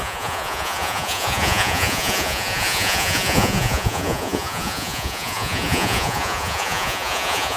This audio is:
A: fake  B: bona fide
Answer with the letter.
A